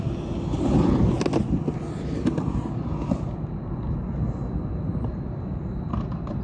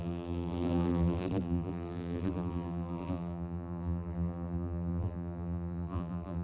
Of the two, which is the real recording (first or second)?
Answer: first